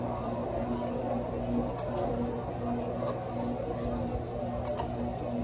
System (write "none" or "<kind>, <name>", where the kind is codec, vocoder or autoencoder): none